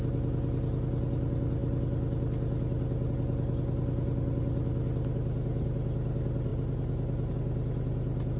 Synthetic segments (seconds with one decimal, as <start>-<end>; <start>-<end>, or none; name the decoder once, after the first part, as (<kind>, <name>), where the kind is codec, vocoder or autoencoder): none